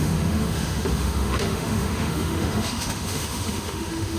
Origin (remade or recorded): remade